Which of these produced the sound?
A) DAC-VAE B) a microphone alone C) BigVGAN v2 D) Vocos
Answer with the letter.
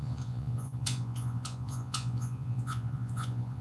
D